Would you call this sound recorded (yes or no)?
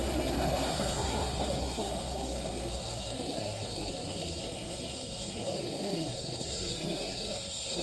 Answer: no